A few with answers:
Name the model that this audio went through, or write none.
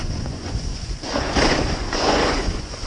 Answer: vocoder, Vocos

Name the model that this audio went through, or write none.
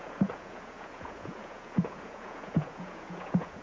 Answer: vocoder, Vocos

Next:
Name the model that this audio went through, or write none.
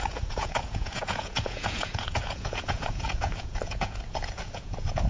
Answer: vocoder, Vocos